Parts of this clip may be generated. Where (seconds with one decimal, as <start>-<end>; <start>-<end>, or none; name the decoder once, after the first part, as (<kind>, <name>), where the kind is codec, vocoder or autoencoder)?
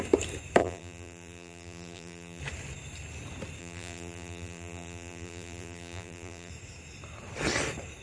0.6-2.4 (vocoder, BigVGAN v2); 3.6-6.5